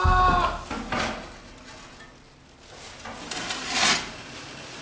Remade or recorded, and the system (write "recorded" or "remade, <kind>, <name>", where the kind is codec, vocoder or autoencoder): recorded